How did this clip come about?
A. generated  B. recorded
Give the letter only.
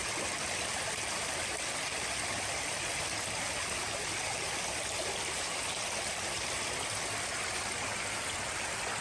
B